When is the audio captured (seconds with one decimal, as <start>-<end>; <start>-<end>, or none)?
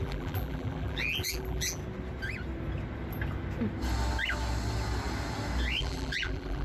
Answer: 1.8-5.8